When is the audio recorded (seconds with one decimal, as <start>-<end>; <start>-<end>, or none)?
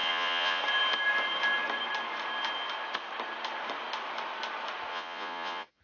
0.6-4.9